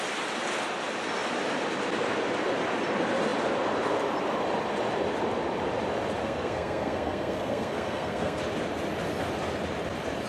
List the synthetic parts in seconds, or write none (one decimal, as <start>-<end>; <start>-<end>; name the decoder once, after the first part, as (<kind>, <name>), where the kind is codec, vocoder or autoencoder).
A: 6.2-8.4 (codec, SNAC)